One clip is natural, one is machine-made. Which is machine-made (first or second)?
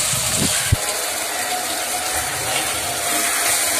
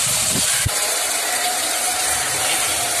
second